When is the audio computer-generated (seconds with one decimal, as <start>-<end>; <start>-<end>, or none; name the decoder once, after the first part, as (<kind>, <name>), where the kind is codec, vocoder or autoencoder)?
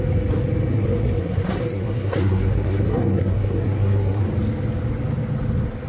0.7-4.2 (codec, SNAC)